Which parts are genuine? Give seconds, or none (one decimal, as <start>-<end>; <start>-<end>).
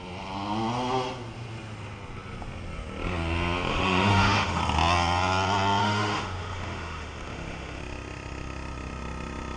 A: 0.0-3.7; 4.6-5.8; 7.8-9.6